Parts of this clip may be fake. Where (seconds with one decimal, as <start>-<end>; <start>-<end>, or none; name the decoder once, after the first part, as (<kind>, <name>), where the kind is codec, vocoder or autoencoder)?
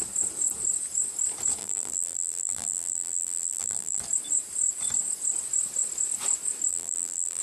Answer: 1.6-4.0 (vocoder, BigVGAN v2); 6.7-7.4